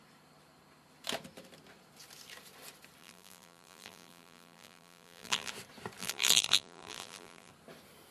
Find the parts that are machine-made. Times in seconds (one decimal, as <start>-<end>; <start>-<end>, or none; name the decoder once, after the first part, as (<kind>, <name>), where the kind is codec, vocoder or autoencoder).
3.0-5.5 (vocoder, BigVGAN v2); 6.0-7.5